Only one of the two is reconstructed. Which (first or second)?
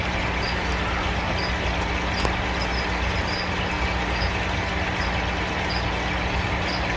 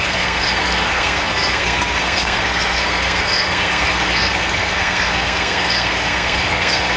second